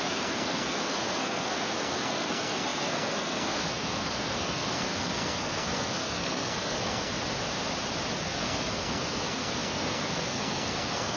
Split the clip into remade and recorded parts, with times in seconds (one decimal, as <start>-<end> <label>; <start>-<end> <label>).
0.0-7.1 remade; 7.1-8.2 recorded; 8.2-11.2 remade